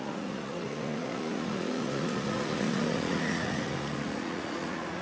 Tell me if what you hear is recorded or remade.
remade